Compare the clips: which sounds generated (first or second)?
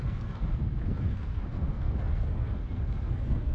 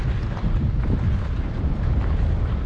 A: first